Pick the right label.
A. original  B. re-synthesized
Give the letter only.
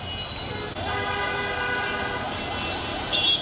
A